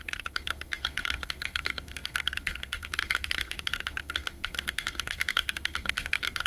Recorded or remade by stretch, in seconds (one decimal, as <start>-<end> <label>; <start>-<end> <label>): 0.0-6.5 remade